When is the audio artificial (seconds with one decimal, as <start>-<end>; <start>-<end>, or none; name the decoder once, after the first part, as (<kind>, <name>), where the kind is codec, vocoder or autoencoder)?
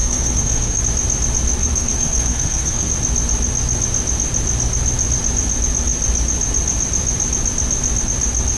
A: 0.0-0.8 (codec, SNAC); 1.6-2.9